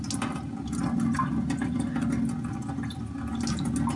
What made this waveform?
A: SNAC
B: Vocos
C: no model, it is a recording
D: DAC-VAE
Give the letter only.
C